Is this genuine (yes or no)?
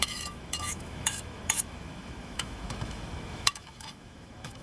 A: no